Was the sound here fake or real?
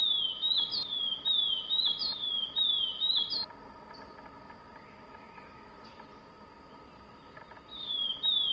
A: real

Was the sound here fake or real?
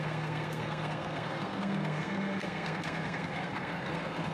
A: fake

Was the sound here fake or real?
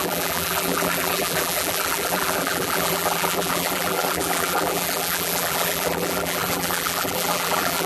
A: fake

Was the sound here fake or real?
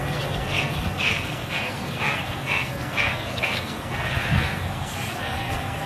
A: fake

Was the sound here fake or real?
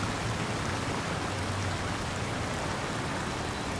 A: real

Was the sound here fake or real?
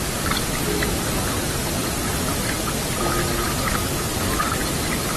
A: real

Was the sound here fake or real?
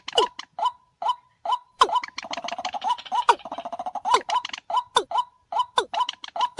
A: real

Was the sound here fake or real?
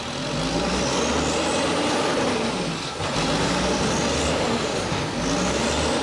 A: real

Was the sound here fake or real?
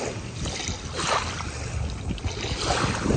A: real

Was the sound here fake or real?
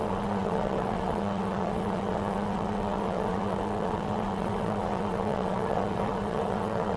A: fake